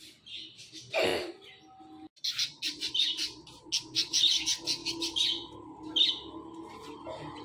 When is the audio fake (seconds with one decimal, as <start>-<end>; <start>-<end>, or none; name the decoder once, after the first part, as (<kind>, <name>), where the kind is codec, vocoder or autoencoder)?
none